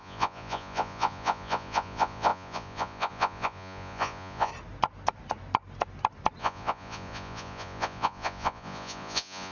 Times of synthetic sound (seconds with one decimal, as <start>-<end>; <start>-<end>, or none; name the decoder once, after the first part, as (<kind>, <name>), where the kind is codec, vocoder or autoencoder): 0.0-4.5 (vocoder, Vocos); 6.4-9.5